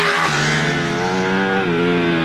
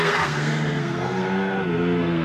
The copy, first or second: second